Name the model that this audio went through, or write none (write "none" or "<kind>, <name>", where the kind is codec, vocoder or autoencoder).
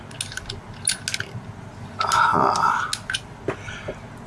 none